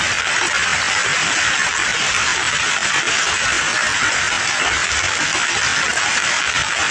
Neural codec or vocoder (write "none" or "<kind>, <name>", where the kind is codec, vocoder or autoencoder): none